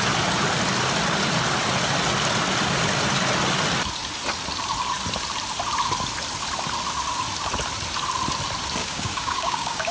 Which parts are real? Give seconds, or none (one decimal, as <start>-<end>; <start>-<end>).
0.0-8.8